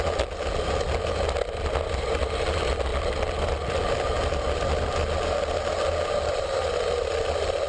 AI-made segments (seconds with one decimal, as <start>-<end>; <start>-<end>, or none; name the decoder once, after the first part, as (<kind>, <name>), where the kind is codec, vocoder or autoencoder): none